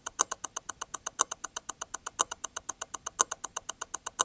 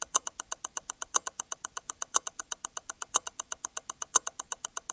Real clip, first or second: first